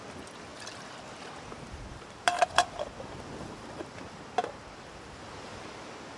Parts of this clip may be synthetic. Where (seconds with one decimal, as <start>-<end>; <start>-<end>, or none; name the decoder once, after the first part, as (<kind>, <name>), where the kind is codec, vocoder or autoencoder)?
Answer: 0.5-1.1 (vocoder, BigVGAN v2); 1.9-5.6